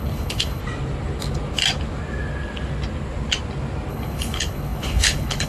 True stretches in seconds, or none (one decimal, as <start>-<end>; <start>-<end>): 0.6-3.9